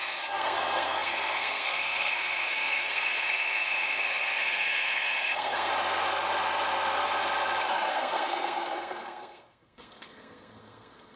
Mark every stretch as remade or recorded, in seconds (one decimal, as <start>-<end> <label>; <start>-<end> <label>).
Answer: 0.0-5.7 remade; 5.7-7.9 recorded; 7.9-11.2 remade